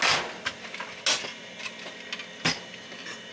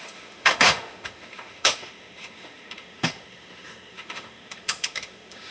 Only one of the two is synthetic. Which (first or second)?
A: second